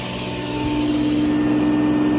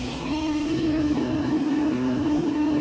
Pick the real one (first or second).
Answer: first